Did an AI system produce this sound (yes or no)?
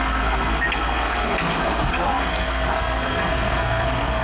yes